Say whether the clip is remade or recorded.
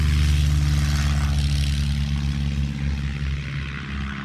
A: recorded